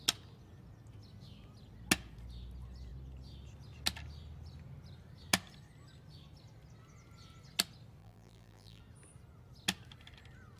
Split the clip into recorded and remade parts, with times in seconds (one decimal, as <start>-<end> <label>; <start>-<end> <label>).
0.0-8.0 recorded; 8.0-8.8 remade; 8.8-10.6 recorded